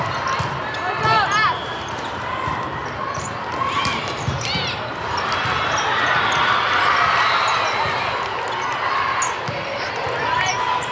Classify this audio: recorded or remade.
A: recorded